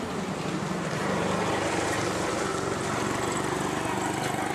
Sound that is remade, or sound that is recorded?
recorded